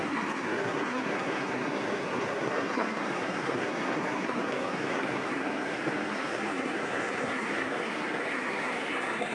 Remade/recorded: remade